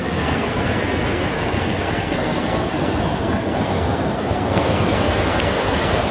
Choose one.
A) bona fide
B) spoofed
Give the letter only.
B